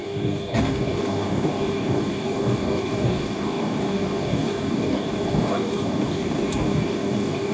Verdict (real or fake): fake